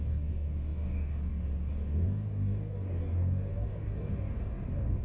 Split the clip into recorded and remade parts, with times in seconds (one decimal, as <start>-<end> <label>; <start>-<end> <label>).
0.0-5.0 remade